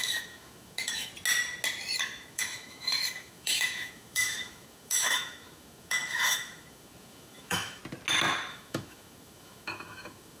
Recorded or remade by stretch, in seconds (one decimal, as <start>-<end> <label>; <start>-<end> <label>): 0.0-1.1 remade; 1.1-2.0 recorded; 2.0-7.8 remade; 7.8-8.5 recorded; 8.5-10.4 remade